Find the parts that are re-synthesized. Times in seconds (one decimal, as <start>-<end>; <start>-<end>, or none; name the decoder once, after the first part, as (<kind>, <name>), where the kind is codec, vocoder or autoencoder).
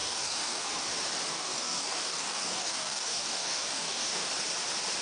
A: 0.0-0.8 (codec, DAC); 1.3-4.3